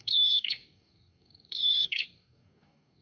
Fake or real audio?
fake